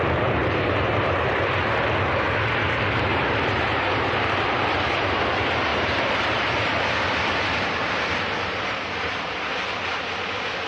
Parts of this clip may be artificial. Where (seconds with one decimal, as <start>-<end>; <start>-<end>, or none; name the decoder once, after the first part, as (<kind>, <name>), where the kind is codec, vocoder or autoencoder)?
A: 0.4-1.5 (vocoder, BigVGAN v2); 3.1-5.2; 5.7-9.2